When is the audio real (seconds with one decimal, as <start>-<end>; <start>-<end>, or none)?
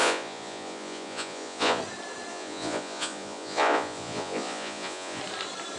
1.8-2.3; 5.2-5.8